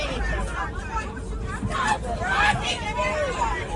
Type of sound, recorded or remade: recorded